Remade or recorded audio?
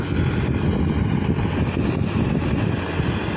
recorded